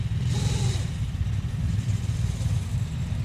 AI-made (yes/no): yes